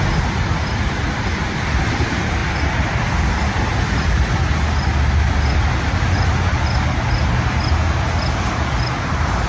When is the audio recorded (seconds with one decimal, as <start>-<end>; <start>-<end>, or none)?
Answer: 0.0-9.5

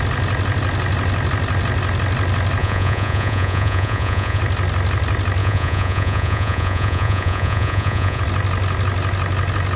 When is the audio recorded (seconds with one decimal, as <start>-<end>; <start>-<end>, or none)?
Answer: 0.0-2.6; 4.4-5.4; 8.2-9.8

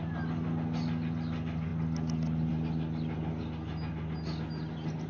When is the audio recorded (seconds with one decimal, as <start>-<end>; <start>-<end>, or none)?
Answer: 0.0-5.1

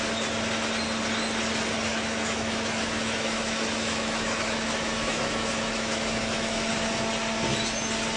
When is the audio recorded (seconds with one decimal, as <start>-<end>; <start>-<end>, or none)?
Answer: 0.0-1.9; 6.7-8.2